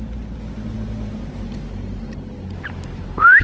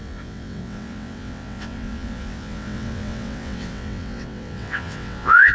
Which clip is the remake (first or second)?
second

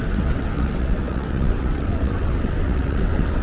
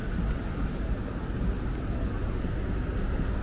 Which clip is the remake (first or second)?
first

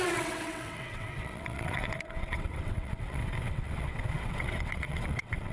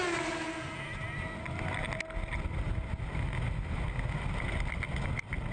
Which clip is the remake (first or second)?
first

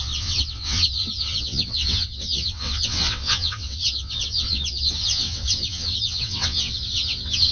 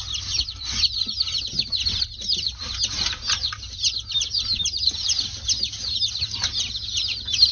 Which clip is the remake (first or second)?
first